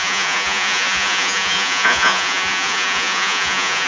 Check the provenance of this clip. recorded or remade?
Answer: remade